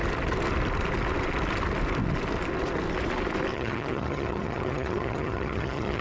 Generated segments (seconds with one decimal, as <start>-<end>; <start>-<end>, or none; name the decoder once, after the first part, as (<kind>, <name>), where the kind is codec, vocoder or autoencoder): 3.5-6.0 (vocoder, HiFi-GAN)